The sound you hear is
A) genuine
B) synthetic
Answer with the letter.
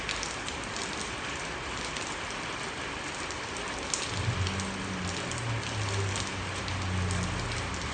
A